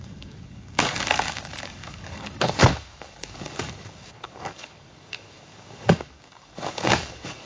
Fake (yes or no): yes